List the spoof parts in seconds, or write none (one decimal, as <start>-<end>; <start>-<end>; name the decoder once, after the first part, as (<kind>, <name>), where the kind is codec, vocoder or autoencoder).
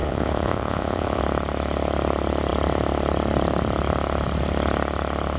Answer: 0.0-1.2 (vocoder, Vocos)